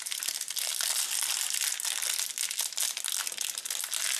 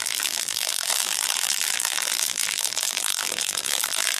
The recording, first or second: first